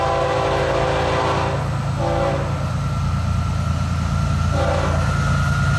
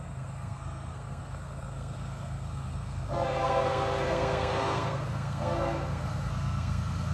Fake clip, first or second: second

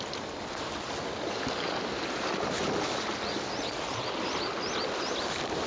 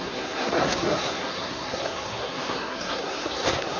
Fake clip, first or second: second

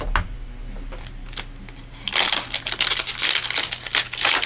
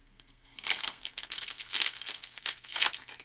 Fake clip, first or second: second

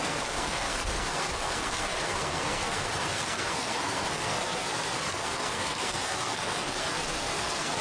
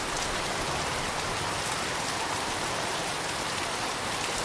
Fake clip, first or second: first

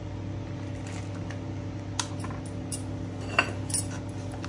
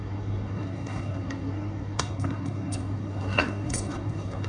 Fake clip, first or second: second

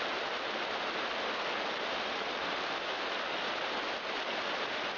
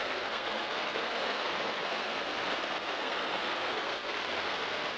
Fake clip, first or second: second